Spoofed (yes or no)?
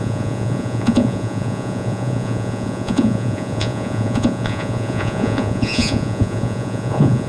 yes